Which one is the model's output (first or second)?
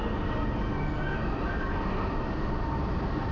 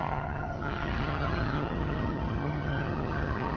second